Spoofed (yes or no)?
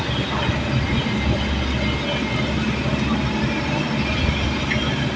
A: no